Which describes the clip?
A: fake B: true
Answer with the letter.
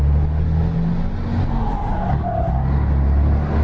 B